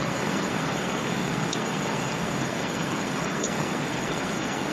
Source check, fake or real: fake